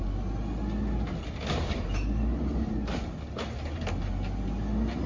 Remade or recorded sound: recorded